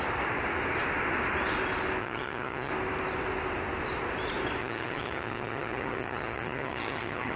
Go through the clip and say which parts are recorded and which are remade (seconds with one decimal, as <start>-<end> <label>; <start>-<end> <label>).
0.0-2.0 recorded; 2.0-2.7 remade; 2.7-4.6 recorded; 4.6-7.4 remade